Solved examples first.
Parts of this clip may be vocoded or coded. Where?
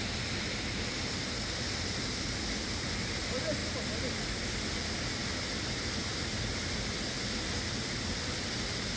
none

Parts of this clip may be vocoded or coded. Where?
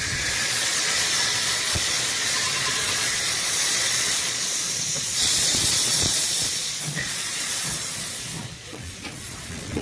0.0-9.8 (vocoder, Vocos)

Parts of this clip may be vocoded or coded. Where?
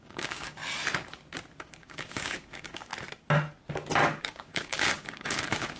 0.0-0.6 (codec, DAC); 1.6-2.9; 4.2-5.8